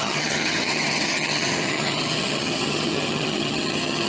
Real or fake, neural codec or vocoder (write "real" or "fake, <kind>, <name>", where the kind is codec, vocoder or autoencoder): fake, vocoder, HiFi-GAN